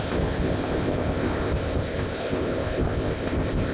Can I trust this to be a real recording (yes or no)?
no